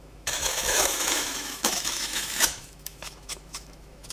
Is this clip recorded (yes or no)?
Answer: no